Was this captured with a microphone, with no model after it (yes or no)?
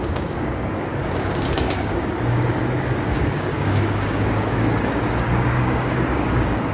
no